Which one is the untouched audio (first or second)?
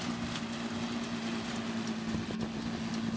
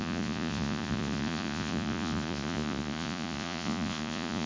first